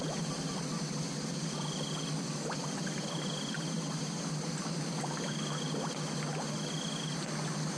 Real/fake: real